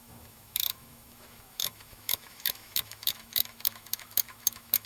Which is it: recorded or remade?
remade